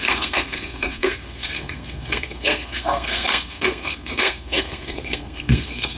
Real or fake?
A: fake